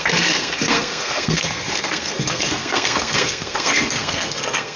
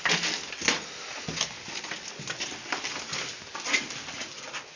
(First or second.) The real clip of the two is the second